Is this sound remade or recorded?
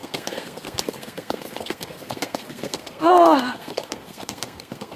remade